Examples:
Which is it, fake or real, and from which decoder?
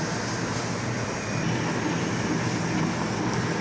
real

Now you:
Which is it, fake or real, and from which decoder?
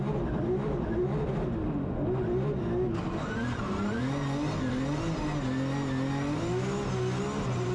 real